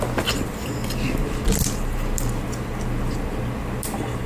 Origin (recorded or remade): recorded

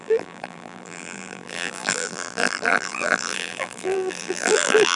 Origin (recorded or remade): remade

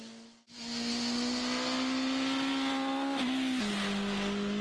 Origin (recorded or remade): recorded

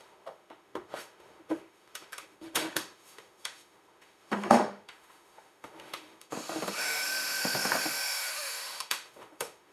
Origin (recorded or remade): remade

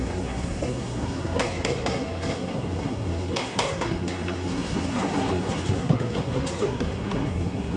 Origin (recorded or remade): remade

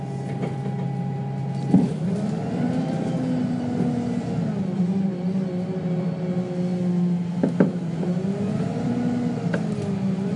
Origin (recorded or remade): recorded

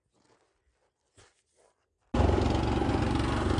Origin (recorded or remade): recorded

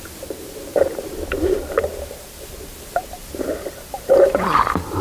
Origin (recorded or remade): remade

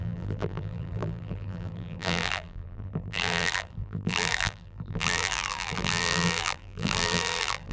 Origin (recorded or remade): remade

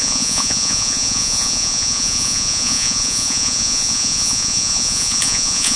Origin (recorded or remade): remade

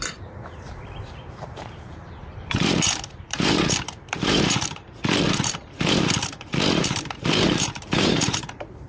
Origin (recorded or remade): remade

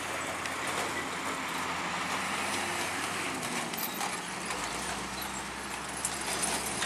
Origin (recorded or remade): recorded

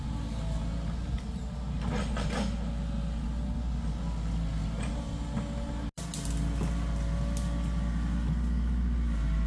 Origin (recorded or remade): recorded